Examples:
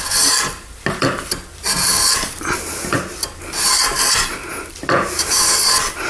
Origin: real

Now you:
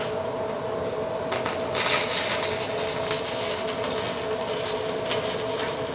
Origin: real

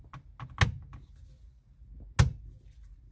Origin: real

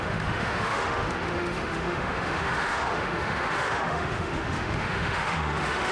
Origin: fake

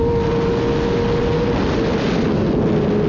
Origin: real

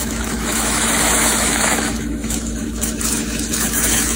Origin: fake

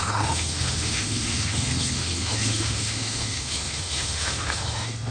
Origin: fake